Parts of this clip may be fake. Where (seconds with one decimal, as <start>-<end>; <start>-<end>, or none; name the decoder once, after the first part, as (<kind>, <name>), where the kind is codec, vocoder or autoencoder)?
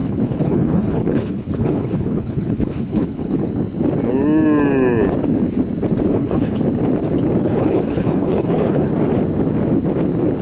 0.0-3.5 (codec, HILCodec); 6.1-6.6; 7.4-8.9